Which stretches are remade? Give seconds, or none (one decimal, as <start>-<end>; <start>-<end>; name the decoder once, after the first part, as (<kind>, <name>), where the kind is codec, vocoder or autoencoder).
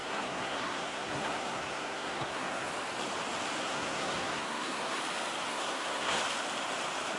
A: 0.0-2.7 (codec, SNAC); 3.6-5.0; 5.5-6.2